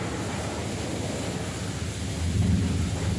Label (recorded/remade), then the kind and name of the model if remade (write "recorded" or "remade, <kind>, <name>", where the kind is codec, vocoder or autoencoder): recorded